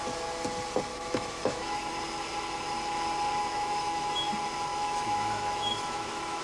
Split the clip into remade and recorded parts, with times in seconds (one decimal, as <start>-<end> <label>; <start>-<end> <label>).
0.0-0.9 recorded; 0.9-1.9 remade; 1.9-3.4 recorded; 3.4-4.3 remade; 4.3-4.7 recorded; 4.7-6.4 remade